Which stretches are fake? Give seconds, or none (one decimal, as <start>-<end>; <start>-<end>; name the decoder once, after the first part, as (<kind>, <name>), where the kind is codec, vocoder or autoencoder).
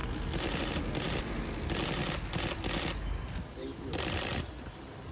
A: none